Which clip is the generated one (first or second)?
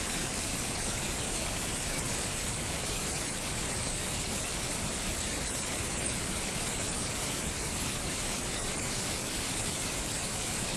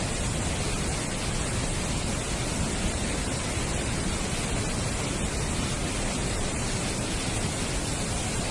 first